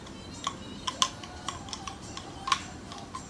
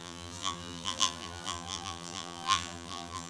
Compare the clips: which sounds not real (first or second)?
second